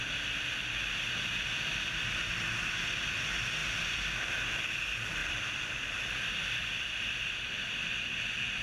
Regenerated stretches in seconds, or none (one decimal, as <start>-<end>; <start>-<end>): 5.2-7.7